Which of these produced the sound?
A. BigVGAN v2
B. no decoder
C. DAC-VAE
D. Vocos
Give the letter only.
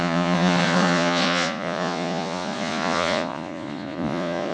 D